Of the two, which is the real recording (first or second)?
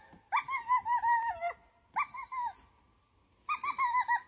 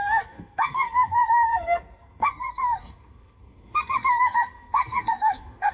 first